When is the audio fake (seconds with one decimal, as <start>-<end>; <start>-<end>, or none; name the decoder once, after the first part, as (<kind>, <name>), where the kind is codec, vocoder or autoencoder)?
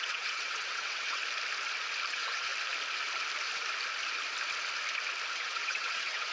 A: 0.0-1.2 (vocoder, WaveNeXt); 2.1-2.5; 5.3-6.3